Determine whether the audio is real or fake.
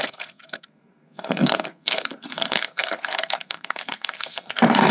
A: fake